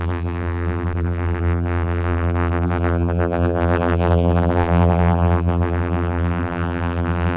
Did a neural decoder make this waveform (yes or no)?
yes